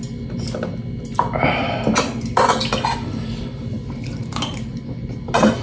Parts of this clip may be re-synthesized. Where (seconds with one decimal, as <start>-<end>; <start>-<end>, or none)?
4.1-4.8

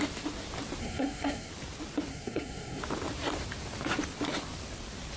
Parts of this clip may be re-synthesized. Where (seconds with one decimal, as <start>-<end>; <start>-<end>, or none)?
0.8-1.5; 2.1-2.8

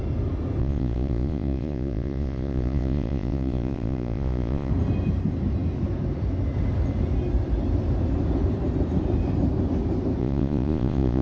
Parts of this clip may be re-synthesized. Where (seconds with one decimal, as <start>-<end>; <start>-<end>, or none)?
0.6-4.7; 10.2-11.2

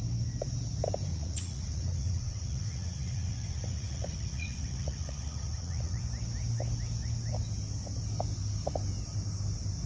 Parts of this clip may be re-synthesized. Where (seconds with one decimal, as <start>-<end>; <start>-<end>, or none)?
1.1-6.0

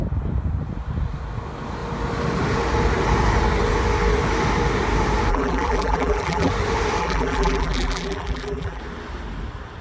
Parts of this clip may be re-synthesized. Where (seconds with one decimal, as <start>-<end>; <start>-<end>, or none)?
5.3-6.5; 7.0-8.8

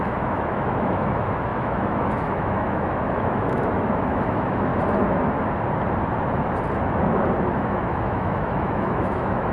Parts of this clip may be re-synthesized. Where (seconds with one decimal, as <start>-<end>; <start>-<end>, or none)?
0.0-4.7; 7.5-9.5

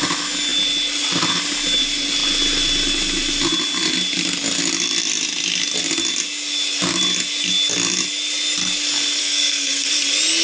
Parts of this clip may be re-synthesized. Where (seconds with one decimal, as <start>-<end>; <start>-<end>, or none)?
9.2-9.9